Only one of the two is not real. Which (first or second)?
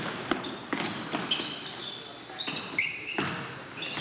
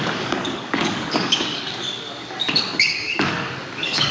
second